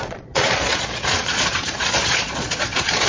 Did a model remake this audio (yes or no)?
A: yes